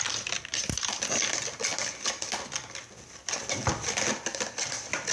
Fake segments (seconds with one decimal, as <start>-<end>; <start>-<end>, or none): 0.0-1.7; 4.1-5.1